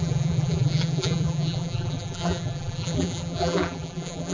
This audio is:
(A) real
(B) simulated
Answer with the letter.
B